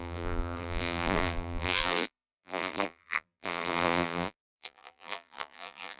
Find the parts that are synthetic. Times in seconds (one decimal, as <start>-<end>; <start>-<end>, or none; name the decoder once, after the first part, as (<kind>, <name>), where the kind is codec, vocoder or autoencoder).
0.0-6.0 (vocoder, BigVGAN v2)

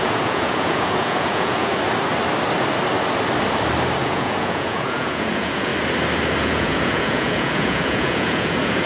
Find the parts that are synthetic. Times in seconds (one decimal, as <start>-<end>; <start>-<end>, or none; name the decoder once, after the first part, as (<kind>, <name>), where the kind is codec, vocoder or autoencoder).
0.0-1.7 (vocoder, Vocos); 4.0-5.7; 6.4-8.9

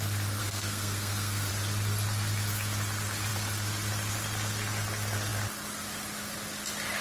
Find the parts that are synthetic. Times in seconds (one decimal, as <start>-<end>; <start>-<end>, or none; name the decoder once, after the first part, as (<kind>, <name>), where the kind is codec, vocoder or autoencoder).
0.4-1.5 (codec, SNAC)

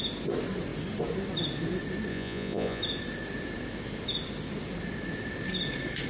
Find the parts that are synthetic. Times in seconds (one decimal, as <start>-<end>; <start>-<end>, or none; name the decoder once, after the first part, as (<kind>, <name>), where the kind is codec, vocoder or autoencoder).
2.1-2.8 (vocoder, Vocos)

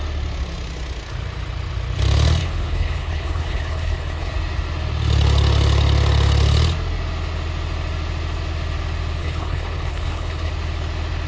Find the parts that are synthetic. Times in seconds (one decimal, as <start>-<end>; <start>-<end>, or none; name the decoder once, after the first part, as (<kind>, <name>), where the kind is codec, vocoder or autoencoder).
2.4-4.3 (codec, HILCodec); 9.2-10.5

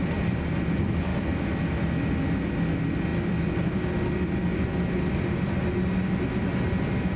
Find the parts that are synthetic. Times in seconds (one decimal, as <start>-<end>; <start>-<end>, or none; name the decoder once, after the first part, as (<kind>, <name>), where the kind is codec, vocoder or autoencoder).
none

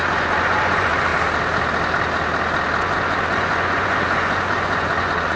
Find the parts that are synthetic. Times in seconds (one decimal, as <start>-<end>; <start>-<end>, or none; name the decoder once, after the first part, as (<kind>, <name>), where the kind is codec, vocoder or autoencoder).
0.0-1.1 (vocoder, Vocos); 2.8-5.4